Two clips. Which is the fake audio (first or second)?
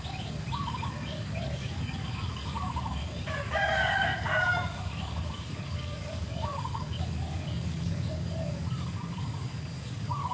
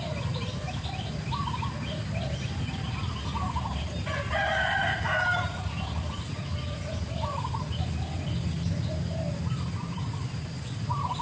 first